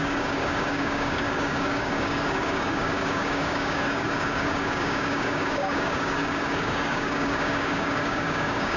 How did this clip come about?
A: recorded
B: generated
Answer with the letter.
B